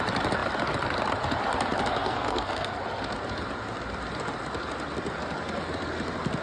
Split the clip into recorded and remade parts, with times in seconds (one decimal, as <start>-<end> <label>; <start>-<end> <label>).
0.0-2.0 recorded; 2.0-2.8 remade; 2.8-6.4 recorded